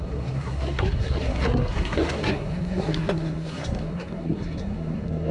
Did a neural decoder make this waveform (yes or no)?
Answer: yes